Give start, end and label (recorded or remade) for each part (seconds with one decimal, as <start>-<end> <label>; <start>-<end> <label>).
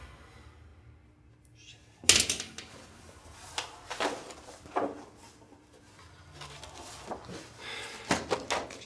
0.0-8.9 recorded